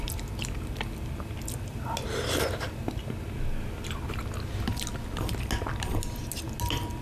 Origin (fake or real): real